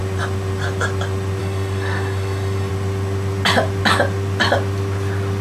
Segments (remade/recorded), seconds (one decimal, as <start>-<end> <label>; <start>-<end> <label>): 0.0-1.4 recorded; 1.4-2.7 remade; 2.7-5.4 recorded